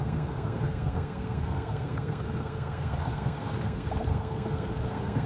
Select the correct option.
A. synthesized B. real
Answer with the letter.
A